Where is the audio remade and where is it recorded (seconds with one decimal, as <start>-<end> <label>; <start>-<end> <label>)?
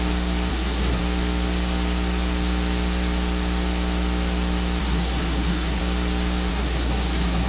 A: 0.0-0.5 recorded; 0.5-1.0 remade; 1.0-4.8 recorded; 4.8-5.8 remade; 5.8-6.5 recorded; 6.5-7.5 remade